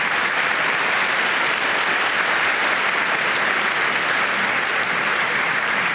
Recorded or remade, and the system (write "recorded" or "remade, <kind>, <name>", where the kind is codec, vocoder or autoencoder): remade, vocoder, BigVGAN v2